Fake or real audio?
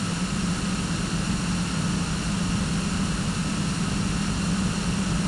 real